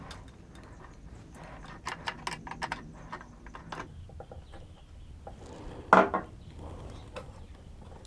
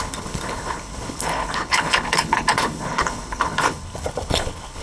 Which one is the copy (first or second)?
second